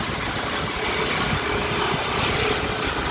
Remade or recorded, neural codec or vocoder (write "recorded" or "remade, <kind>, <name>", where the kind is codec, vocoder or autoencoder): recorded